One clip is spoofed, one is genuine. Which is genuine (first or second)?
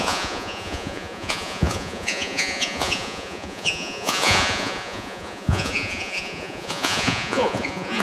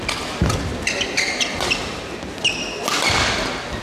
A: second